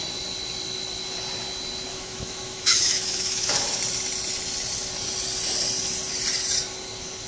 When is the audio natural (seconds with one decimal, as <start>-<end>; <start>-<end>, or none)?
0.0-1.9; 3.8-7.3